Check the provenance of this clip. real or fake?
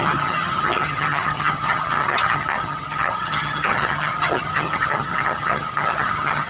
fake